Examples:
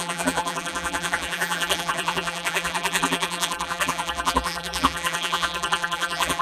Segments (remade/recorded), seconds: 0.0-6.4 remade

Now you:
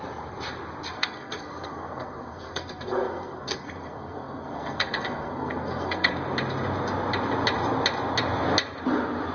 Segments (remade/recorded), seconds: 0.0-0.9 recorded; 0.9-6.1 remade; 6.1-9.3 recorded

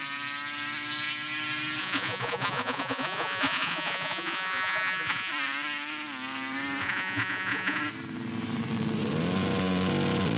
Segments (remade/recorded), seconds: 0.0-1.8 recorded; 1.8-5.3 remade; 5.3-6.8 recorded; 6.8-7.8 remade; 7.8-10.4 recorded

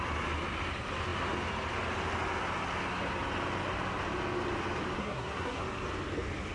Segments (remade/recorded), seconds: 0.0-5.0 recorded; 5.0-5.6 remade; 5.6-6.5 recorded

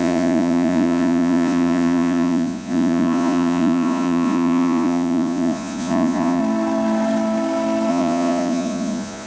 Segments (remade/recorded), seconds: 0.0-6.4 remade; 6.4-7.9 recorded; 7.9-9.3 remade